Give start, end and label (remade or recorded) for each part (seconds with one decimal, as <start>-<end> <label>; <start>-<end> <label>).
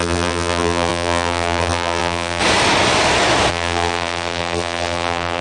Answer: 0.0-2.4 remade; 2.4-3.5 recorded; 3.5-5.4 remade